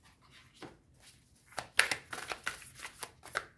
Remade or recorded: recorded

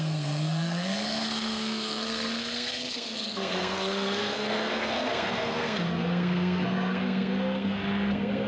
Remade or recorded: remade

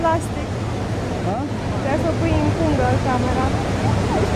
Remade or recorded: recorded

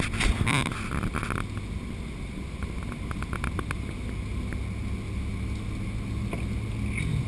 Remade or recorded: recorded